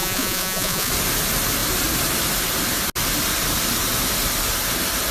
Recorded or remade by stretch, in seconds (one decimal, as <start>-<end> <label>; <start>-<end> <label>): 0.0-0.9 remade; 0.9-5.1 recorded